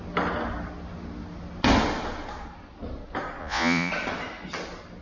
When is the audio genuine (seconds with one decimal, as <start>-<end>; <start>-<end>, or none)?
0.0-3.4; 3.9-5.0